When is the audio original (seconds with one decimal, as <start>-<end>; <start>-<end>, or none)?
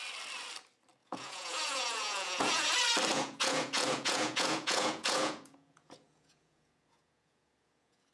0.0-1.0; 2.7-3.1